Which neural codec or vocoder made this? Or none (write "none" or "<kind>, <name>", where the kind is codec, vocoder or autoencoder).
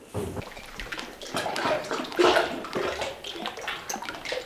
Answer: none